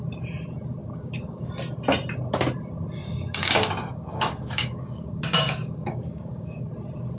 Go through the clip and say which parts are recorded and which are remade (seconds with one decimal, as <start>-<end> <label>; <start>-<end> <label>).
0.0-0.8 recorded; 0.8-1.5 remade; 1.5-3.0 recorded; 3.0-6.7 remade; 6.7-7.2 recorded